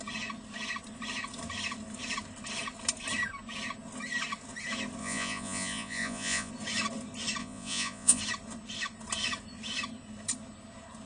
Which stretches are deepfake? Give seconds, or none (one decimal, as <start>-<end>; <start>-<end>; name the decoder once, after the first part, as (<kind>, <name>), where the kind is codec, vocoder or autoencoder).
5.0-6.5 (vocoder, Vocos); 7.4-8.2